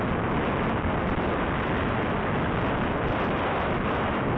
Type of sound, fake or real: real